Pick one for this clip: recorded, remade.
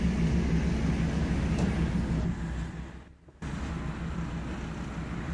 recorded